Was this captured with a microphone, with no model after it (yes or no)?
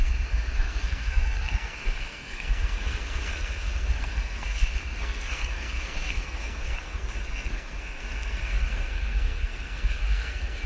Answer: no